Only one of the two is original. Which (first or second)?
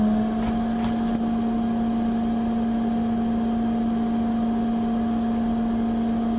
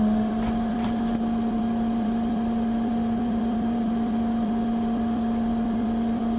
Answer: first